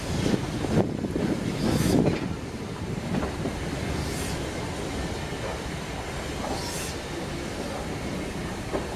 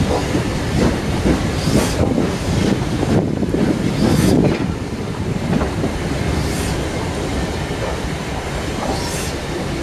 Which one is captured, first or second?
first